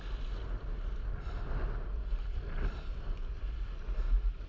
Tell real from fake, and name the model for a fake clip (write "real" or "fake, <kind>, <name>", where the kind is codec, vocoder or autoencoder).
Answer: real